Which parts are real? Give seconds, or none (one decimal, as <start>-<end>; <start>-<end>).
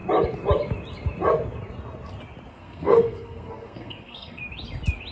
0.0-2.5; 4.4-5.1